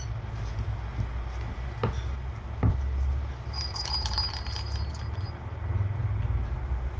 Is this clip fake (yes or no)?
no